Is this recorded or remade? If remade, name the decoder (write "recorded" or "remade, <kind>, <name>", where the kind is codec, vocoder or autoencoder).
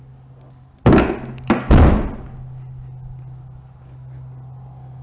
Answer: recorded